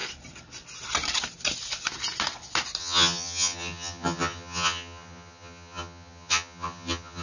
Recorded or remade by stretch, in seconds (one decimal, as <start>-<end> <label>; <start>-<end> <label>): 0.0-2.8 recorded; 2.8-7.2 remade

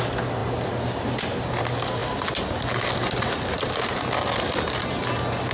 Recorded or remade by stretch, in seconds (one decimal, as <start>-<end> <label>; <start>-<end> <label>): 0.0-5.5 recorded

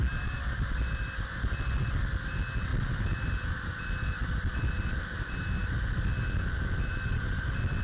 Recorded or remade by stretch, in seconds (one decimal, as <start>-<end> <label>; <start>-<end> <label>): 0.0-7.8 recorded

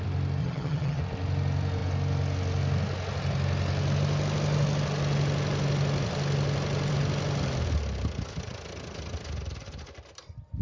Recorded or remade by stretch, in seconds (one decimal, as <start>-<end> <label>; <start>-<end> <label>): 0.0-0.4 recorded; 0.4-1.0 remade; 1.0-10.6 recorded

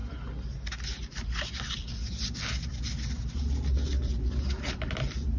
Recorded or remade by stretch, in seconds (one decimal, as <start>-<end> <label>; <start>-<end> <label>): 0.0-5.4 recorded

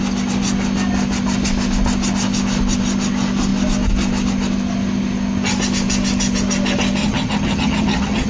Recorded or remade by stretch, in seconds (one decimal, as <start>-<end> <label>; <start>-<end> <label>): 0.0-7.0 recorded; 7.0-8.3 remade

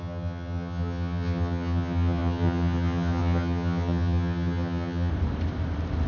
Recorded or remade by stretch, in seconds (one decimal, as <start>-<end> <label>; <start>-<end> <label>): 0.0-5.1 remade; 5.1-6.1 recorded

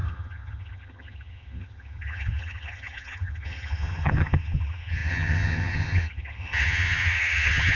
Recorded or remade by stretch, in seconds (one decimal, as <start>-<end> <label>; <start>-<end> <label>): 0.0-7.7 remade